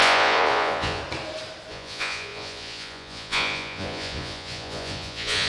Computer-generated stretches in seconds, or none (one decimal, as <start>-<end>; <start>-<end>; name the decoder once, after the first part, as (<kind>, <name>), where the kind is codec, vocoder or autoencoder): 0.0-1.0 (vocoder, Vocos); 1.7-5.5